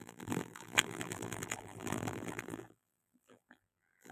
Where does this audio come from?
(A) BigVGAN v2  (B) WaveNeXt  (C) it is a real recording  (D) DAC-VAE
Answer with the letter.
A